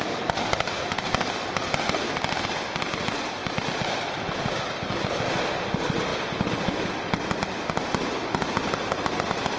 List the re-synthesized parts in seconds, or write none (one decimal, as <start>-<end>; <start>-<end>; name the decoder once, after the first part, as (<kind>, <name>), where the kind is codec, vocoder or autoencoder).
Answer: none